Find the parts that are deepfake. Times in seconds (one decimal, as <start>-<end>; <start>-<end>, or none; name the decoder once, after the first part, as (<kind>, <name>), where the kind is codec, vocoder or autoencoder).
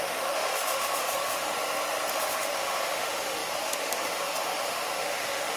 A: 0.0-1.5 (autoencoder, DAC-VAE); 2.1-5.6